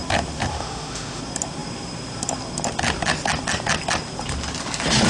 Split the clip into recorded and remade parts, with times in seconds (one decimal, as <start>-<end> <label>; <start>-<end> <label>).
0.0-0.5 recorded; 0.5-1.2 remade; 1.2-5.1 recorded